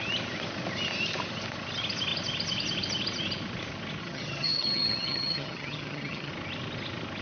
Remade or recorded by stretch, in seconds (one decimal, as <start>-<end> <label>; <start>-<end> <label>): 0.0-4.0 recorded; 4.0-6.3 remade; 6.3-7.2 recorded